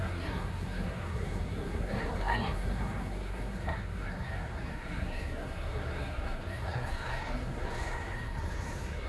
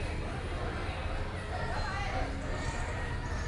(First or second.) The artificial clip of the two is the first